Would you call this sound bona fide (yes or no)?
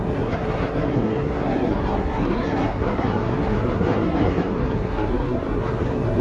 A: no